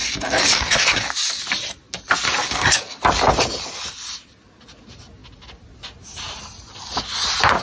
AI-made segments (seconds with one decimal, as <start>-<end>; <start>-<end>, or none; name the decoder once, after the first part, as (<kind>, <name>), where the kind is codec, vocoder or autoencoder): 0.0-1.4 (codec, DAC); 2.4-3.0